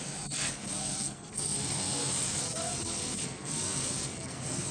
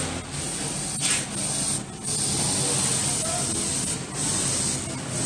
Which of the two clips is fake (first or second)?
first